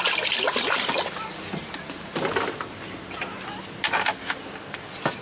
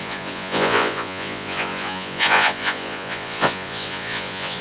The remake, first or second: second